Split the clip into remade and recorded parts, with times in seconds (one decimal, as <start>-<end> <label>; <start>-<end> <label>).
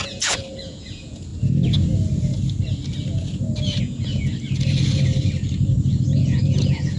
0.0-1.3 remade; 1.3-3.8 recorded; 3.8-4.3 remade; 4.3-6.2 recorded; 6.2-7.0 remade